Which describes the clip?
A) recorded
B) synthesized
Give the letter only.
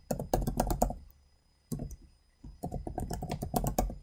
A